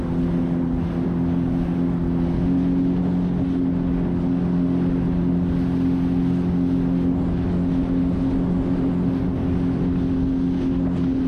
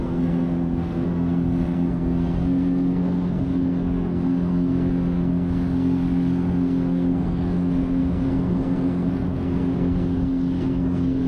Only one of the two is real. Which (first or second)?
first